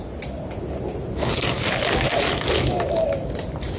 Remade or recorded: recorded